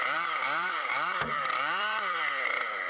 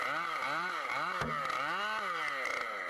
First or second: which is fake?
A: first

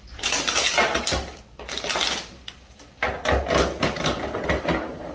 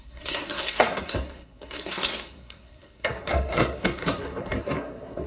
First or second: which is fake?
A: second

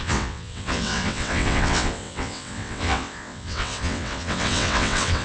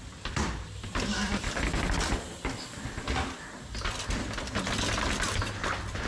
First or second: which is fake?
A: first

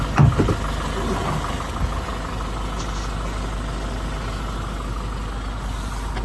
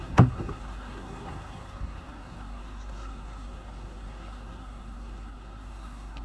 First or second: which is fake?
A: second